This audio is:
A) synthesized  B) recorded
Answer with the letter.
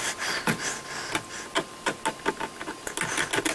B